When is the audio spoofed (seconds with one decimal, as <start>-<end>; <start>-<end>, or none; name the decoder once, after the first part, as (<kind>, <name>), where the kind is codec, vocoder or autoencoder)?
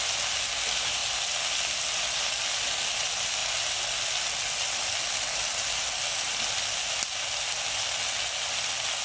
none